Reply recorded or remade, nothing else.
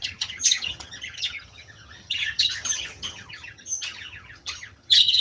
remade